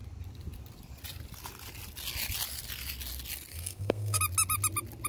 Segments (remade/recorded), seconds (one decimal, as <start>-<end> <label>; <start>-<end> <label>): 0.0-3.5 recorded; 3.5-4.2 remade; 4.2-5.1 recorded